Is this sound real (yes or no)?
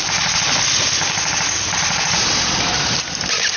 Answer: yes